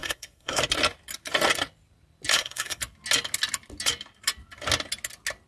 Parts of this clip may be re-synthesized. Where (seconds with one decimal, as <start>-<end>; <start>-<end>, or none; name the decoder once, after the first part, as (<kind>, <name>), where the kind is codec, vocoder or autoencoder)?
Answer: 0.0-0.6 (codec, SNAC); 2.3-2.8